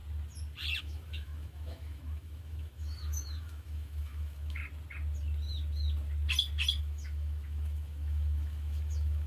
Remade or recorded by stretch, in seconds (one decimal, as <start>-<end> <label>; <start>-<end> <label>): 0.0-0.8 recorded; 0.8-4.6 remade; 4.6-6.8 recorded; 6.8-9.3 remade